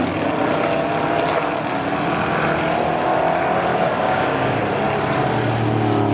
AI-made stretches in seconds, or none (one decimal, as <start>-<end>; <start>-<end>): 3.7-4.6